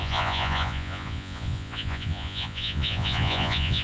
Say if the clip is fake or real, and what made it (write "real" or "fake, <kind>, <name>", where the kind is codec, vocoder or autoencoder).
fake, vocoder, Vocos